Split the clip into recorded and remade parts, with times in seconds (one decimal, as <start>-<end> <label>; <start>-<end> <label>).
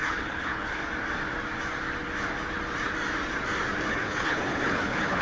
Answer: 0.0-0.8 remade; 0.8-3.9 recorded; 3.9-5.2 remade